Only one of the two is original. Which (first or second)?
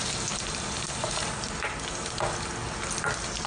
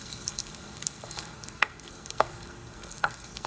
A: first